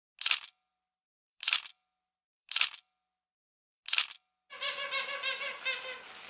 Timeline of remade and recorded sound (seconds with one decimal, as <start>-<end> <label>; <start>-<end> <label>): 0.0-0.7 recorded; 0.7-3.8 remade; 3.8-6.3 recorded